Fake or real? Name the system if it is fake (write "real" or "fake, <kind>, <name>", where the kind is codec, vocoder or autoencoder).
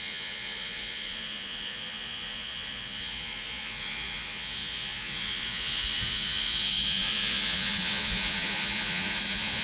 fake, vocoder, Vocos